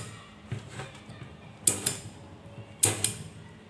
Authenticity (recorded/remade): recorded